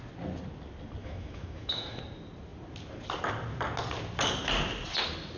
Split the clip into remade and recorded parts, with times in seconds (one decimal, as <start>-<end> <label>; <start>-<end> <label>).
0.0-1.0 recorded; 1.0-2.0 remade; 2.0-5.4 recorded